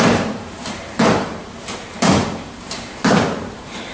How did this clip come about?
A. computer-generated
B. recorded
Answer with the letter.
A